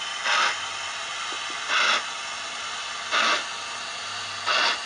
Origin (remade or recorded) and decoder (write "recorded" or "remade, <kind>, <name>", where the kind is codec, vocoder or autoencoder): recorded